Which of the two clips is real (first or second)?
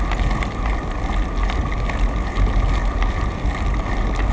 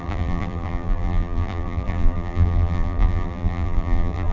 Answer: first